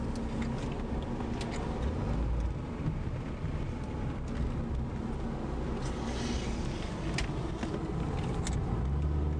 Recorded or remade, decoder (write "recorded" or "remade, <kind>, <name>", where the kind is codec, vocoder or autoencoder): recorded